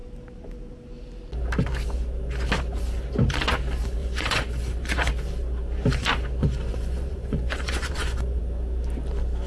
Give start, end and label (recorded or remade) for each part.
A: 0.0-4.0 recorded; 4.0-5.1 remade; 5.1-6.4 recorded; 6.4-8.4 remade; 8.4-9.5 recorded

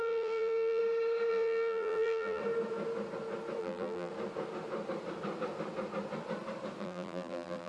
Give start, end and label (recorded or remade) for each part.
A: 0.0-0.8 remade; 0.8-1.3 recorded; 1.3-2.4 remade; 2.4-3.6 recorded; 3.6-4.1 remade; 4.1-6.8 recorded; 6.8-7.7 remade

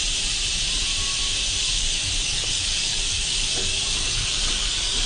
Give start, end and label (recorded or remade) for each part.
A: 0.0-1.6 recorded; 1.6-5.1 remade

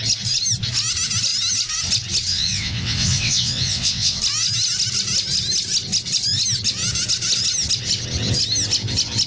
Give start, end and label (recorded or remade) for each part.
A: 0.0-2.3 recorded; 2.3-4.2 remade; 4.2-9.3 recorded